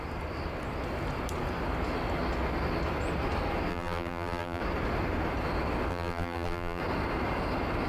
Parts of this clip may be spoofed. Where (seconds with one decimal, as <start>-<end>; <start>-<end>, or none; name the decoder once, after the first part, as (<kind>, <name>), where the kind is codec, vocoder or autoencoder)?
3.7-4.6 (vocoder, BigVGAN v2); 5.9-6.8